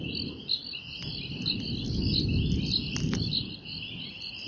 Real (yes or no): yes